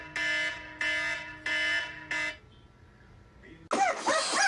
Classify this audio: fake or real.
real